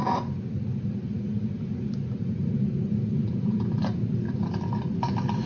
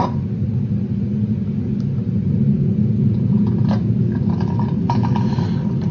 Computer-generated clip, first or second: first